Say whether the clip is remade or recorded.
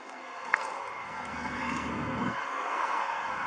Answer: remade